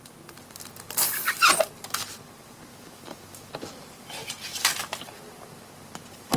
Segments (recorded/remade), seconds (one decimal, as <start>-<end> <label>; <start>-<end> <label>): 0.0-2.7 recorded; 2.7-3.5 remade; 3.5-6.4 recorded